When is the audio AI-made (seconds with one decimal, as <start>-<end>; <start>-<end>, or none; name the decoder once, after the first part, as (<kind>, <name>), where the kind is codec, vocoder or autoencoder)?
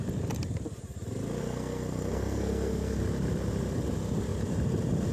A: 1.4-3.0 (codec, SNAC)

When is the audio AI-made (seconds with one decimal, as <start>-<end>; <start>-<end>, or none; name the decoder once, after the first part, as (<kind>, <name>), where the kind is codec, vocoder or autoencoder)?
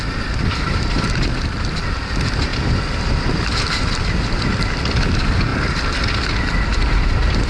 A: none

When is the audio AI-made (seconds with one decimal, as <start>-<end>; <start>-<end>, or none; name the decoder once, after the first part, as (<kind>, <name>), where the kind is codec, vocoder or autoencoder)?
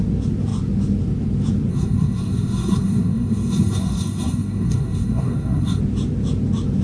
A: 1.7-5.8 (codec, SNAC)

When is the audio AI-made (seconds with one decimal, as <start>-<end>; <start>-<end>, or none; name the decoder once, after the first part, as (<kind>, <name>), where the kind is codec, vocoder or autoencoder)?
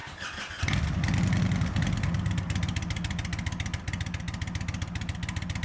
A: none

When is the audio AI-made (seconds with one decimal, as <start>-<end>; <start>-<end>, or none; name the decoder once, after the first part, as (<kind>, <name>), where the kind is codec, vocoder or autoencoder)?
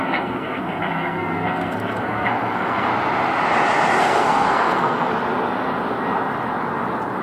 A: 0.0-2.9 (codec, SNAC); 4.0-5.1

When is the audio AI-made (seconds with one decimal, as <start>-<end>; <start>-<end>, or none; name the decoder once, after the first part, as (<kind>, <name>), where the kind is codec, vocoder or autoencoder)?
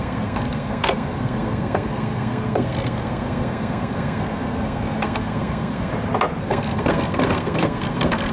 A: 0.0-5.9 (codec, SNAC); 6.4-8.3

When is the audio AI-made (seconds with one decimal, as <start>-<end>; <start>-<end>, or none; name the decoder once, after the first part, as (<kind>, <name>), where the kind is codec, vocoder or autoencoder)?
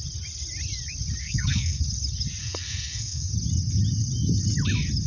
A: 1.2-1.8 (codec, SNAC); 2.4-3.3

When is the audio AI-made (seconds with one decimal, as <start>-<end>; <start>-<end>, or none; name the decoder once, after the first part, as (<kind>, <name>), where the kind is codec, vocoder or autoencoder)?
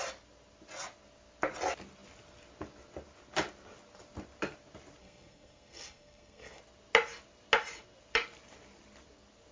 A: 5.0-6.6 (codec, SNAC)